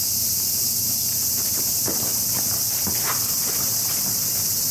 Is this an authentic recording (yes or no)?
yes